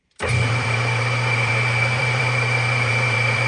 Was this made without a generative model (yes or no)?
no